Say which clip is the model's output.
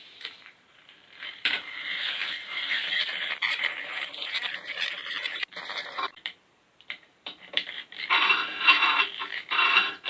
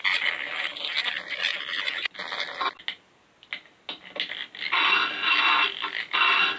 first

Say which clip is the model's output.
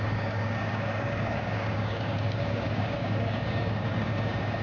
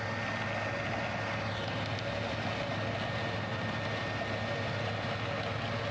first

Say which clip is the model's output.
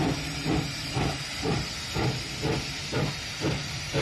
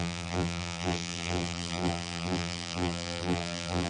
second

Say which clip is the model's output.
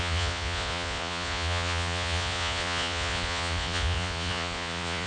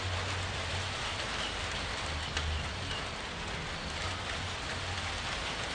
first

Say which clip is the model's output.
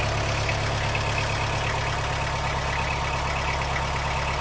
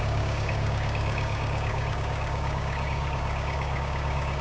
second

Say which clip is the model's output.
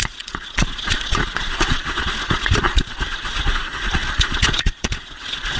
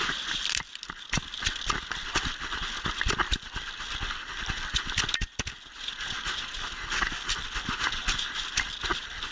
first